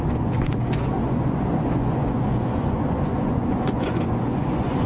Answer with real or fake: fake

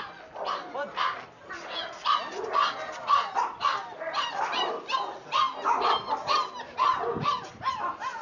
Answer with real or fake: real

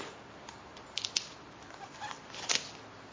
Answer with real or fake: real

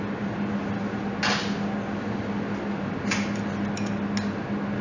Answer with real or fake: real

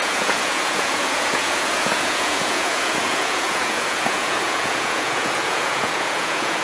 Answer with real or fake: fake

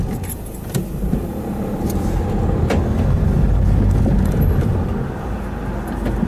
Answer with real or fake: real